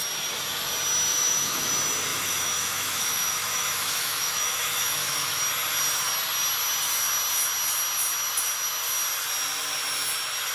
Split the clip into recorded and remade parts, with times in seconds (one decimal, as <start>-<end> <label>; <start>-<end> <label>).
0.0-1.1 recorded; 1.1-1.7 remade; 1.7-2.1 recorded; 2.1-5.4 remade; 5.4-10.5 recorded